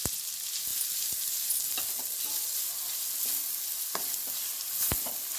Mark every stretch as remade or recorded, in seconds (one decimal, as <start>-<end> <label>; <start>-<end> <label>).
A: 0.0-5.4 recorded